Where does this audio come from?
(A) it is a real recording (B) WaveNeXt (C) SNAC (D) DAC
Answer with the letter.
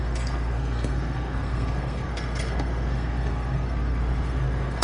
C